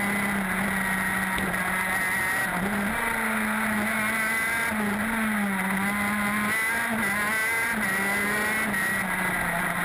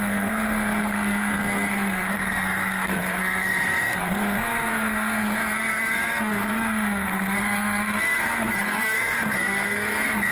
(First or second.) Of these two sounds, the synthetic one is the second